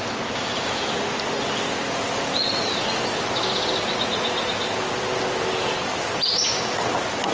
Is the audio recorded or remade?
recorded